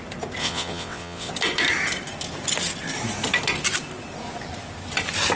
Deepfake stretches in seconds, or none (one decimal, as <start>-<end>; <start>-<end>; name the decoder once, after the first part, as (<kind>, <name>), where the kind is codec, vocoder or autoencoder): 0.4-1.3 (vocoder, WaveNeXt)

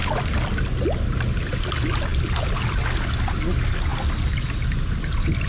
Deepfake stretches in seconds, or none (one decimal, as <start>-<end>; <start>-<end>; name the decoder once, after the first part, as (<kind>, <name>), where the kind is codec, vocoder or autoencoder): none

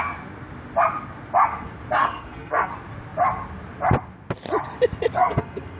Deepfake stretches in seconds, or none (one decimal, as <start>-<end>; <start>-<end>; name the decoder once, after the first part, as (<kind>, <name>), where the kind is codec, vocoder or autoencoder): 2.0-2.7 (codec, SNAC); 5.2-5.8

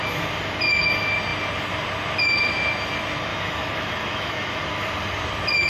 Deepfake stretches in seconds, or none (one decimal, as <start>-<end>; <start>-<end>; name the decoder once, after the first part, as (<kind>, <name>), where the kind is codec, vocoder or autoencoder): 3.3-4.6 (autoencoder, DAC-VAE)

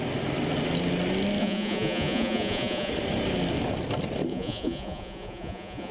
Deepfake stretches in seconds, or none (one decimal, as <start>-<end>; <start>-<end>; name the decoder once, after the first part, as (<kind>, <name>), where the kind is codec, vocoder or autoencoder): 1.4-2.9 (vocoder, Vocos); 4.3-5.9

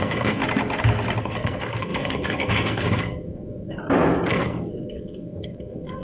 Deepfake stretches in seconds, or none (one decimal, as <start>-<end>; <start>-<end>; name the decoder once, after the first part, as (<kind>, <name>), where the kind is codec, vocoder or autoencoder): 0.0-0.4 (codec, SNAC); 1.2-3.8; 4.3-6.0